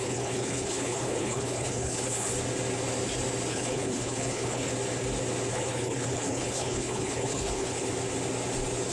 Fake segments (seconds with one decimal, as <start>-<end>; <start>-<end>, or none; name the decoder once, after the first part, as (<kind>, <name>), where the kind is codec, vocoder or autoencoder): 0.0-2.3 (codec, HILCodec); 3.5-4.7; 5.5-7.9